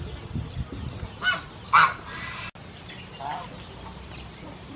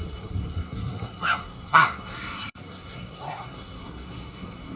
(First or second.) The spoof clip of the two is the second